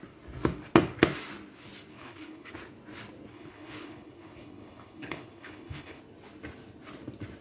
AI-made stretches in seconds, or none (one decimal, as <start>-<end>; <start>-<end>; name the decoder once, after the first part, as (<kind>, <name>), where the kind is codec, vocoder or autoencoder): 1.9-2.5 (codec, HILCodec); 3.3-6.0